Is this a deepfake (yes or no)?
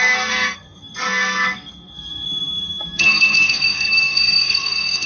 yes